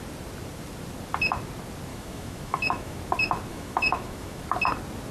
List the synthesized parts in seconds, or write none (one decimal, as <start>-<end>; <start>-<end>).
1.9-3.0; 3.5-4.4